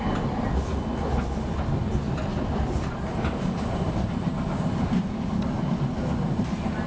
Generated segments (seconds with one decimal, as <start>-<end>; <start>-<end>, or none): 2.3-3.9

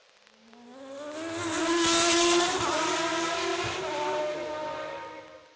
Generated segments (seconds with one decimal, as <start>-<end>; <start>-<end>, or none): 2.1-2.9; 3.5-4.2

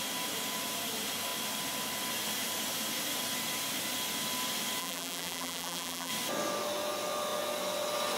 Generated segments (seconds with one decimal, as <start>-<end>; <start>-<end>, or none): 4.8-6.1